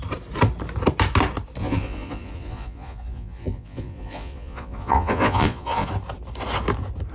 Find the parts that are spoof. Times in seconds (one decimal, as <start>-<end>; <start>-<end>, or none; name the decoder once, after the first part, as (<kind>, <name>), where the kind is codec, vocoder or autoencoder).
1.6-5.9 (vocoder, Vocos)